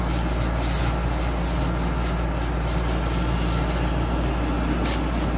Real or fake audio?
real